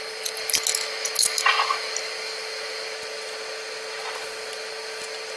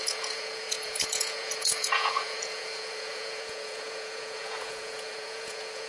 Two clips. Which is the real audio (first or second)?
first